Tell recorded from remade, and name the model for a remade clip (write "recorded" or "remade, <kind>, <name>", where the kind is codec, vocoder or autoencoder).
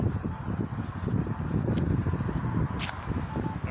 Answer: recorded